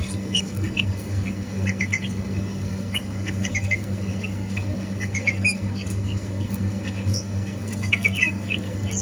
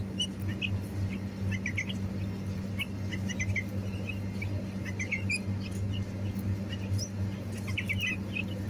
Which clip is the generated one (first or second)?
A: first